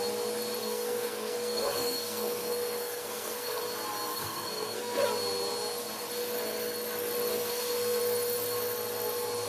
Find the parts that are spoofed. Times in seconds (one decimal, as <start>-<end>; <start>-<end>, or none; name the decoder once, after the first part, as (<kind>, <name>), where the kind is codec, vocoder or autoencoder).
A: 0.6-3.6 (codec, SNAC); 4.1-5.0; 7.3-8.0